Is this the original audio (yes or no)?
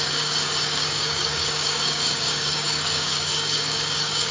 no